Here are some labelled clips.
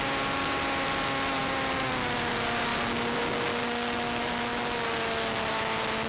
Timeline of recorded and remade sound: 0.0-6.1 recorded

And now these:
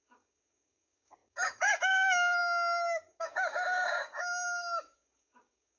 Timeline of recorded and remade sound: 0.0-5.8 remade

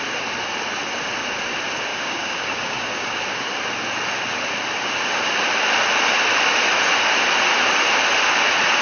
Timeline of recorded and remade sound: 0.0-1.9 recorded; 1.9-3.2 remade; 3.2-8.8 recorded

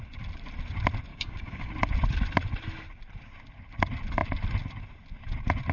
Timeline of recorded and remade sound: 0.0-1.1 recorded; 1.1-1.7 remade; 1.7-5.7 recorded

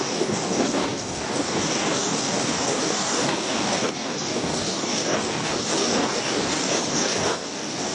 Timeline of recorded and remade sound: 0.0-7.9 remade

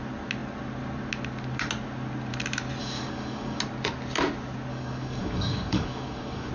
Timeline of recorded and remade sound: 0.0-2.8 recorded; 2.8-3.6 remade; 3.6-4.7 recorded; 4.7-6.5 remade

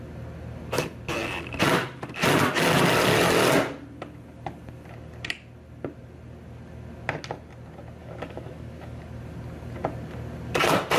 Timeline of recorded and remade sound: 0.0-8.0 recorded; 8.0-9.0 remade; 9.0-11.0 recorded